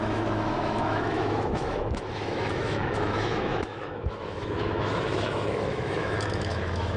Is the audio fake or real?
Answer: fake